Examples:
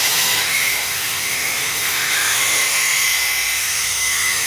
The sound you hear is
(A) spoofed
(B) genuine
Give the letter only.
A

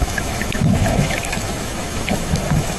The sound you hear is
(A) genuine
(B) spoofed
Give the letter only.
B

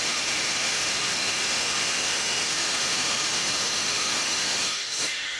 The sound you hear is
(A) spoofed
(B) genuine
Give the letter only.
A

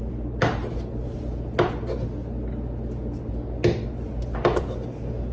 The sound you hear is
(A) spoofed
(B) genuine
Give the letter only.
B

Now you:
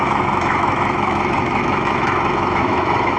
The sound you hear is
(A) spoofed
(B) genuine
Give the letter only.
A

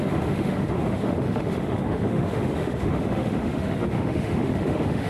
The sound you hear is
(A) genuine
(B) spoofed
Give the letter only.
B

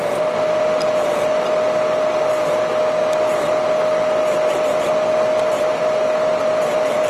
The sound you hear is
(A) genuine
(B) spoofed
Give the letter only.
A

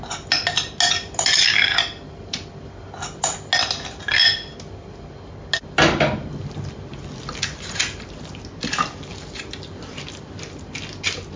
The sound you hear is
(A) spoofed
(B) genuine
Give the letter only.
B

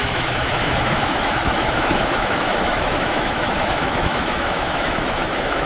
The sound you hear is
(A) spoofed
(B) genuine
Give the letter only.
A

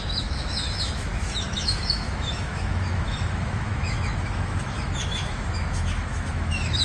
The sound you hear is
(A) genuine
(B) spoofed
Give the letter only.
B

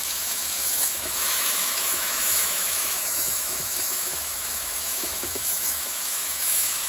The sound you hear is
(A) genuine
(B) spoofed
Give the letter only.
B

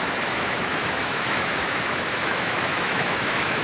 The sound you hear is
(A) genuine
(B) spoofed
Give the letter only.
B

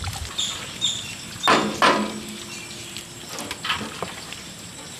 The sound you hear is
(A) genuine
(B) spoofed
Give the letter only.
A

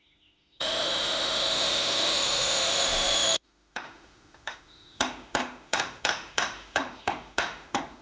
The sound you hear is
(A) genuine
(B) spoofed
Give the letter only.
B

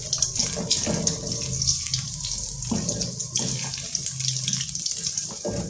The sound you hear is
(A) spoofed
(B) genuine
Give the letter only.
B